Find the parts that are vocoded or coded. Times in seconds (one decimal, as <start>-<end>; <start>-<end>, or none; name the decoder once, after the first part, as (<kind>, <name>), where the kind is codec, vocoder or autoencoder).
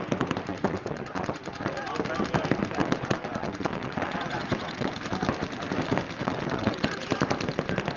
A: 0.5-1.9 (vocoder, WaveNeXt); 2.8-4.9; 6.2-7.1